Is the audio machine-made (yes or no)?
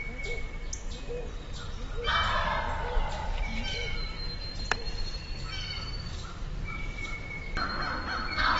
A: no